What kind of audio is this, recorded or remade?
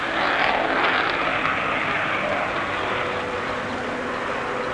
recorded